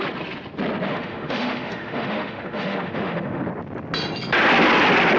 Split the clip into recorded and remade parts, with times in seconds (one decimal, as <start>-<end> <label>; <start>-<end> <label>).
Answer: 0.0-0.9 recorded; 0.9-3.4 remade; 3.4-5.2 recorded